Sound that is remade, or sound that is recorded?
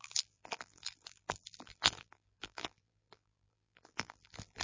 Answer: remade